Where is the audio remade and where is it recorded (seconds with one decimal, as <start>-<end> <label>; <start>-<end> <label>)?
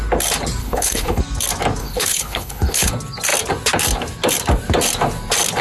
0.0-0.6 recorded; 0.6-1.2 remade; 1.2-1.8 recorded; 1.8-2.9 remade; 2.9-5.6 recorded